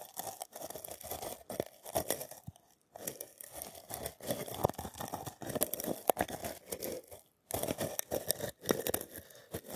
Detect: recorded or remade recorded